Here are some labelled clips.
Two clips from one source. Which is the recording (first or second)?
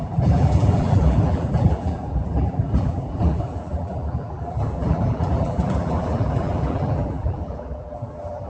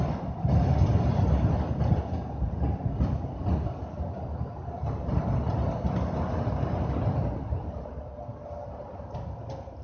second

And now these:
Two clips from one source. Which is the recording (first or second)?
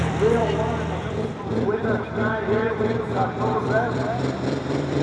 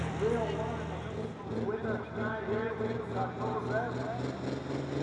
second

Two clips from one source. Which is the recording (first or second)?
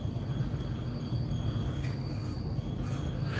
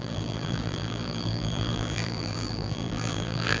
first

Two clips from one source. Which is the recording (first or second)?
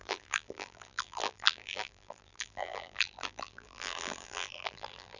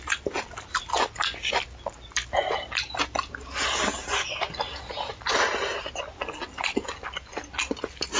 second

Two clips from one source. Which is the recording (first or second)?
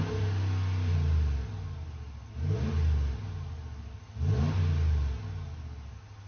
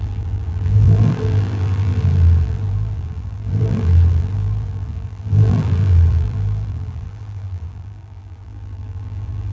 first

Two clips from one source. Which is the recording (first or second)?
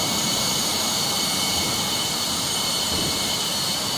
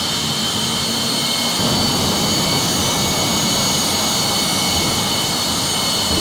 second